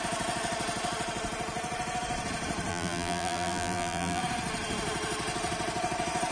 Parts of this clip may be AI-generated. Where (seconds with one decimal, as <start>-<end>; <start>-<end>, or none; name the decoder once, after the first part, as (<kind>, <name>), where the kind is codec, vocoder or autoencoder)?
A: 2.7-4.2 (vocoder, BigVGAN v2)